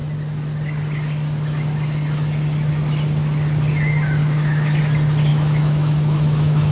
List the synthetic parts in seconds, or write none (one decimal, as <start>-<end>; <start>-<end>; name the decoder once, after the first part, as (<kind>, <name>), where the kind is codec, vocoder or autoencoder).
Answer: 4.2-4.8 (autoencoder, DAC-VAE); 5.3-6.7